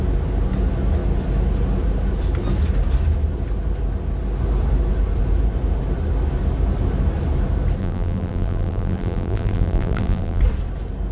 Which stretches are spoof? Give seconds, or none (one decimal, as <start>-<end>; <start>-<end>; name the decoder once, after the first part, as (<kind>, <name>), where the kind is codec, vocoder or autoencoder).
7.8-10.4 (vocoder, BigVGAN v2)